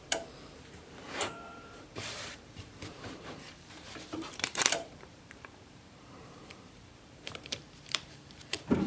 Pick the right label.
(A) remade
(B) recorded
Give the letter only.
A